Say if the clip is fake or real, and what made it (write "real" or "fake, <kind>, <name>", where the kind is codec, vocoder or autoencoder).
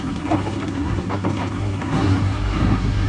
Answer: fake, codec, SNAC